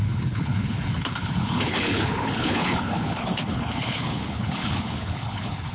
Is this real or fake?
fake